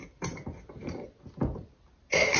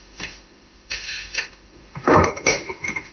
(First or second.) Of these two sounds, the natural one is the first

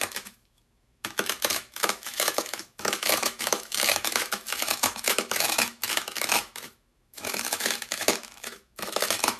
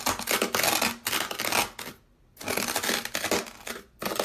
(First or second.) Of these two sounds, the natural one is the second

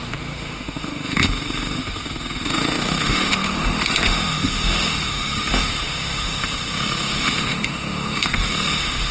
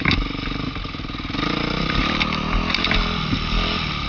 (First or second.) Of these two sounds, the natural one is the second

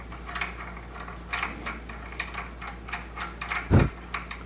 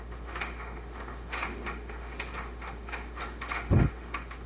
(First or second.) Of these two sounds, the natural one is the first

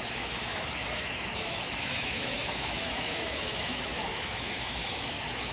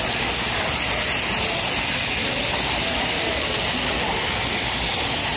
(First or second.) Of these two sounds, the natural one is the second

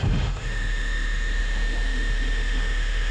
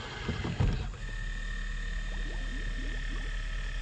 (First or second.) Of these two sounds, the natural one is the second